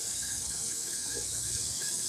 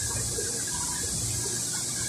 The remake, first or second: first